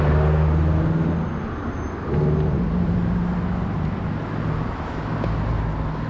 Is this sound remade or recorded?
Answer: recorded